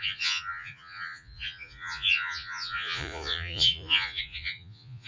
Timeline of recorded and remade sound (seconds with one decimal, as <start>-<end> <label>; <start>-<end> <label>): 0.0-5.1 remade

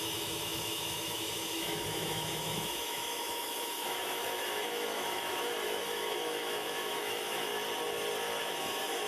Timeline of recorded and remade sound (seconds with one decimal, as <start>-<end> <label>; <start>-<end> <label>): 0.0-7.5 remade; 7.5-8.4 recorded; 8.4-9.1 remade

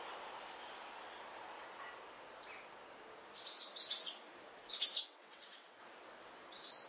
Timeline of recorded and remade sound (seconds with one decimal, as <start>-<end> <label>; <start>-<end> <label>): 0.0-5.0 recorded; 5.0-5.8 remade; 5.8-6.9 recorded

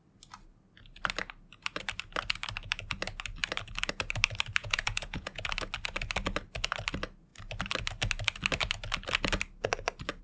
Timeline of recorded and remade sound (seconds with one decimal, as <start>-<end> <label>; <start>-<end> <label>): 0.0-4.6 recorded; 4.6-5.4 remade; 5.4-10.2 recorded

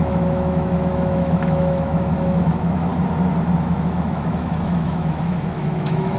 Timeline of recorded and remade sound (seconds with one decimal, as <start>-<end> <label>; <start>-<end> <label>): 0.0-2.9 remade; 2.9-3.6 recorded; 3.6-6.2 remade

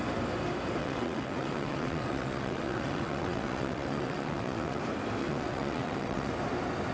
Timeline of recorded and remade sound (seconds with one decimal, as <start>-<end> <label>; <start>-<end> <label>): 0.0-0.8 recorded; 0.8-4.8 remade; 4.8-5.2 recorded; 5.2-6.3 remade; 6.3-6.9 recorded

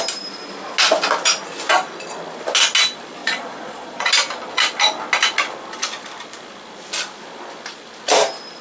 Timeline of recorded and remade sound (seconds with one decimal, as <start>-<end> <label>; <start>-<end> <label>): 0.0-3.2 recorded; 3.2-4.1 remade; 4.1-8.6 recorded